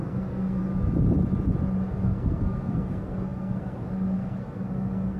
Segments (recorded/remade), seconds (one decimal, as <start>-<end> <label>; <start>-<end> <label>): 0.0-0.6 remade; 0.6-1.9 recorded; 1.9-5.2 remade